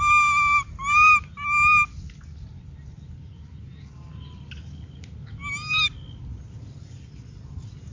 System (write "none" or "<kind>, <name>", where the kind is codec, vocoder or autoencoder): none